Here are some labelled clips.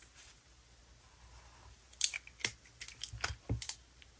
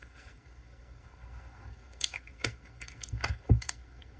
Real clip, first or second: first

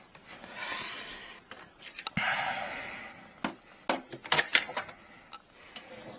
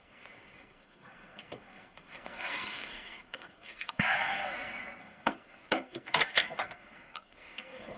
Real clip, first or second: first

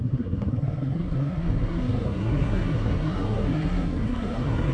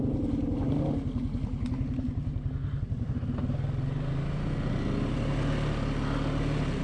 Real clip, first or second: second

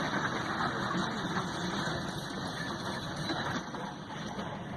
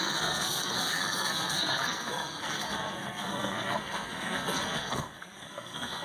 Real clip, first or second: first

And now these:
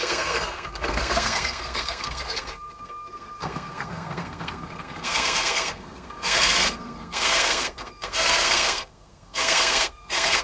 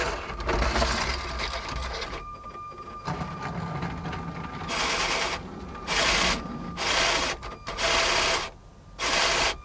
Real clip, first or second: second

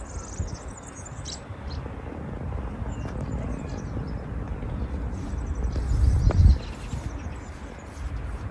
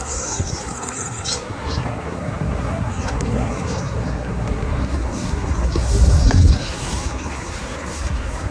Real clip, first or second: first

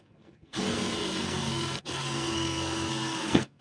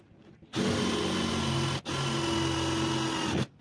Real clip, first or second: second